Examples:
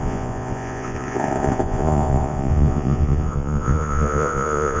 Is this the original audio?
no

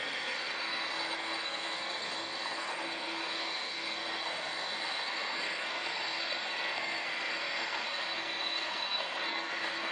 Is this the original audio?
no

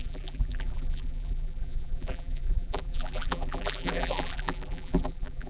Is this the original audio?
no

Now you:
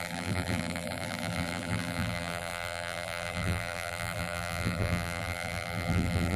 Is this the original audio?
no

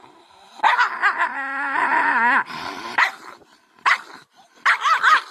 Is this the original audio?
no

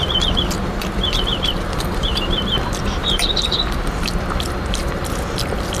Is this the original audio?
no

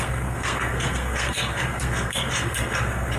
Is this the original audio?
no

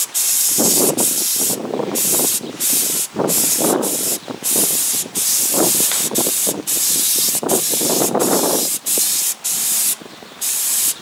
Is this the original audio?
no